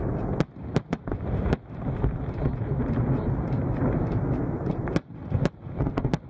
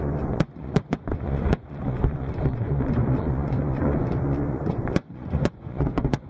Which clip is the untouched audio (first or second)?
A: first